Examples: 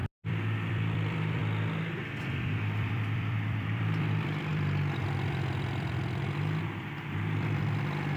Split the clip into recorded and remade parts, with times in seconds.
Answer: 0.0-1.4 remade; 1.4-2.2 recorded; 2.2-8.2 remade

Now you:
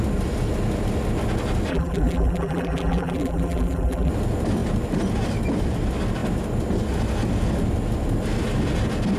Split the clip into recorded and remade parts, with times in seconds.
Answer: 0.0-1.7 recorded; 1.7-4.1 remade; 4.1-9.2 recorded

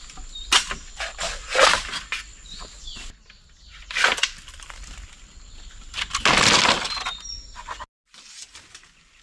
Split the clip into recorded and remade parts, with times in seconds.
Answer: 0.0-9.2 recorded